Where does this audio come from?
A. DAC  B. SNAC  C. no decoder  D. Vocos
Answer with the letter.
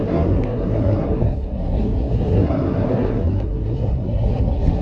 B